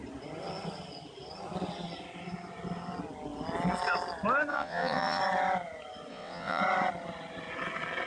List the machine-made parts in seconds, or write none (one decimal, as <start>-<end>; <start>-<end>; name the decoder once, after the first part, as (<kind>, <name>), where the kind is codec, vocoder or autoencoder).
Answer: 4.5-5.2 (vocoder, WaveNeXt); 6.1-6.6